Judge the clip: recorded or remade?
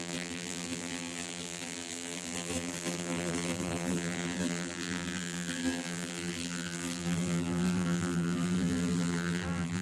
remade